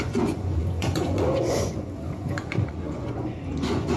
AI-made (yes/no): yes